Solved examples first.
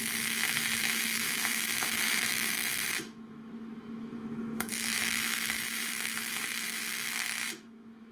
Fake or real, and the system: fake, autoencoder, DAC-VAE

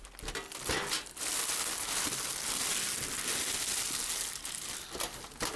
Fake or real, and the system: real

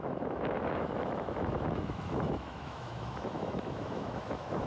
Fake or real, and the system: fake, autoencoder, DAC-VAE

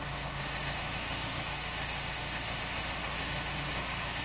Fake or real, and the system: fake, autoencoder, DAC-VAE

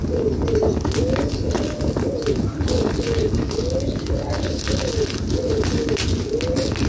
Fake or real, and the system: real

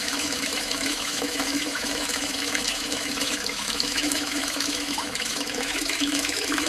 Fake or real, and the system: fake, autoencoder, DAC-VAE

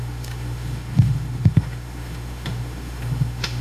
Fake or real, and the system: fake, autoencoder, DAC-VAE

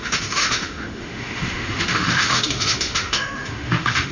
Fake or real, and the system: fake, autoencoder, DAC-VAE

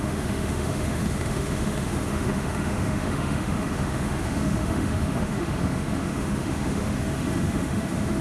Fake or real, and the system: fake, autoencoder, DAC-VAE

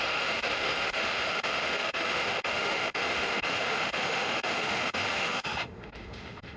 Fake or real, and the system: fake, autoencoder, DAC-VAE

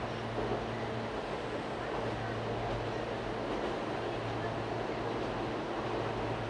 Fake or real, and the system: real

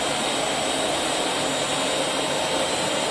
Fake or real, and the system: real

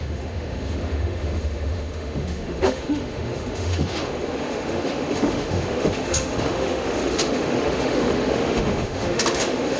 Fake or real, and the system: fake, autoencoder, DAC-VAE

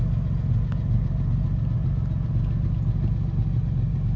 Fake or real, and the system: real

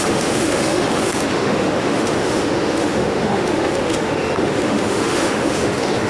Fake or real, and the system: fake, autoencoder, DAC-VAE